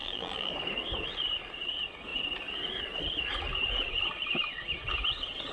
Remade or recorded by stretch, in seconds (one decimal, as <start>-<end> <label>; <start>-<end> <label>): 0.0-0.5 remade; 0.5-5.5 recorded